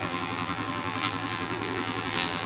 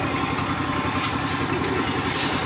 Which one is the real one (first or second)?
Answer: second